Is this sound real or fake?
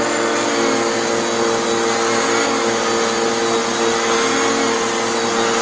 real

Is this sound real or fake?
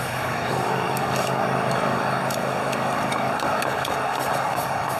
fake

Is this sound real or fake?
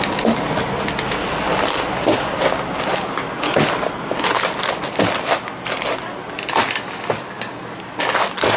real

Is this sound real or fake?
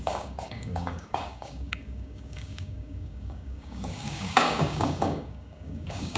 fake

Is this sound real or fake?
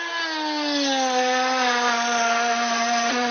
real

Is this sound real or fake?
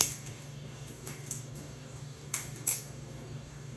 fake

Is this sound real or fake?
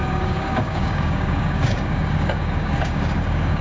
fake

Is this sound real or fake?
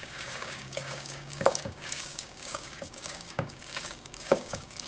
fake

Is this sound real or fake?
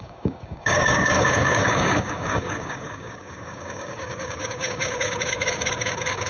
fake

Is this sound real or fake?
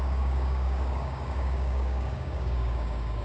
fake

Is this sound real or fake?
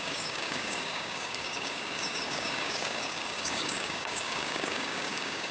fake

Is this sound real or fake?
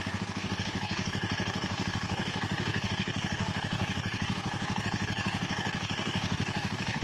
fake